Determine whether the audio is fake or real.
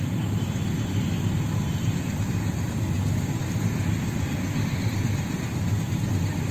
real